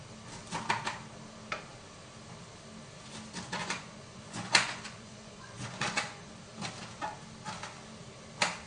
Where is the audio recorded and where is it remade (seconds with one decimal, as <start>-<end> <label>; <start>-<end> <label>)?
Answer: 0.0-3.6 recorded; 3.6-6.3 remade; 6.3-8.7 recorded